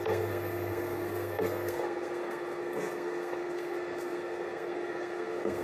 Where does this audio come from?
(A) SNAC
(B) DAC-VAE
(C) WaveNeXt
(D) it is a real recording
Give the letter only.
A